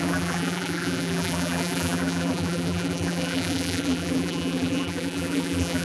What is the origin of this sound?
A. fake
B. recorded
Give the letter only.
A